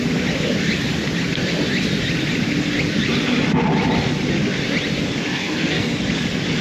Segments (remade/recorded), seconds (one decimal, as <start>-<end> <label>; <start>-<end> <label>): 0.0-5.3 recorded; 5.3-5.9 remade; 5.9-6.6 recorded

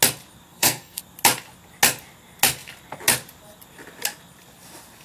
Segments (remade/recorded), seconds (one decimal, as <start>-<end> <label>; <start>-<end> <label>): 0.0-0.5 recorded; 0.5-1.0 remade; 1.0-5.0 recorded

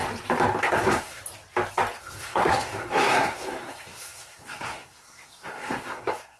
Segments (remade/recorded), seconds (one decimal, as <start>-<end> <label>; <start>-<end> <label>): 0.0-0.6 recorded; 0.6-1.2 remade; 1.2-2.0 recorded; 2.0-6.4 remade

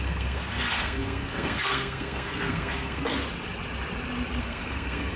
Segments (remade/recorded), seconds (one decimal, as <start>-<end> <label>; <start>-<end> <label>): 0.0-3.2 remade; 3.2-4.4 recorded; 4.4-5.2 remade